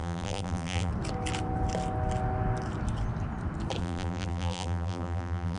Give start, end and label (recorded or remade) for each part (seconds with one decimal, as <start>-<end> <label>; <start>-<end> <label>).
0.0-0.9 remade; 0.9-3.8 recorded; 3.8-5.6 remade